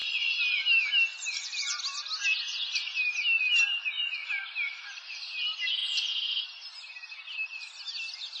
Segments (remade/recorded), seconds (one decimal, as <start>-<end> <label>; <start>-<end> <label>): 0.0-4.2 recorded; 4.2-5.0 remade; 5.0-8.4 recorded